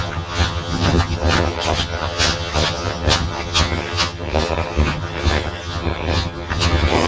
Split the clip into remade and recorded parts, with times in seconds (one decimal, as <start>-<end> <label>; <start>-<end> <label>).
0.0-7.1 remade